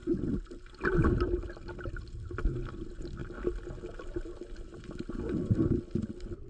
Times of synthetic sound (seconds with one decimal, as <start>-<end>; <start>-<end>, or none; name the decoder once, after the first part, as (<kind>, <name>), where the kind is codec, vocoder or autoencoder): none